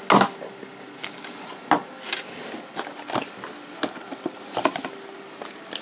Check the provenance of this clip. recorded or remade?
recorded